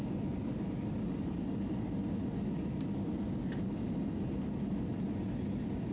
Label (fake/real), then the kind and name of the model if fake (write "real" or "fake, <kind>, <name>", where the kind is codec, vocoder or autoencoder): real